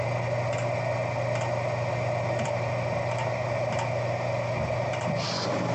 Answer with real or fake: real